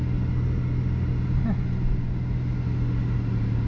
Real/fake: real